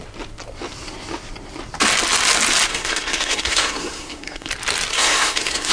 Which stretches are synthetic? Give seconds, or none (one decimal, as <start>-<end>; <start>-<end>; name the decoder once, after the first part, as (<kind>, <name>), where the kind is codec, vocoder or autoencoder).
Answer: 2.7-4.5 (codec, SNAC); 4.9-5.7